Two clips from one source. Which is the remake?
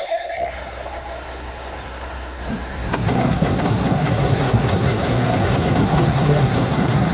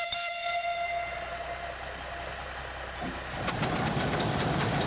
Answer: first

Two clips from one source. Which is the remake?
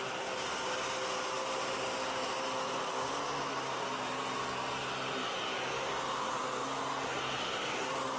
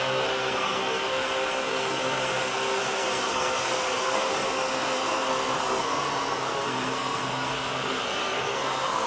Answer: second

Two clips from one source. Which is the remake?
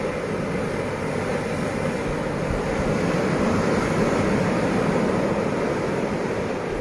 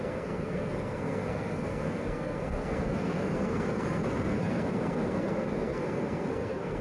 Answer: second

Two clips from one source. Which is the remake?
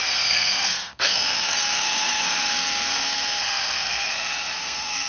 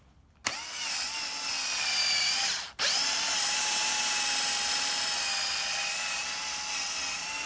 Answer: first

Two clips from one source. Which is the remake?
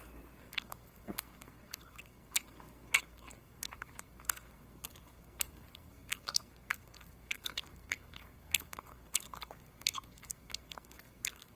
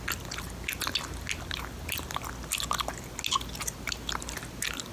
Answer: first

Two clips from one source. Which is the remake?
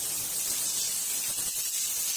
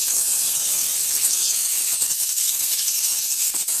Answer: second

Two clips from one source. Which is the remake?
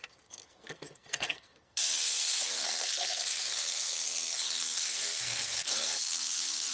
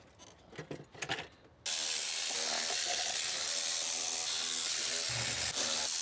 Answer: first